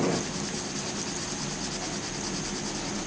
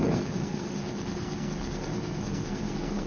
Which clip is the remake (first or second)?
second